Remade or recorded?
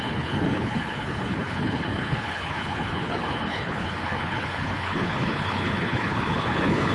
remade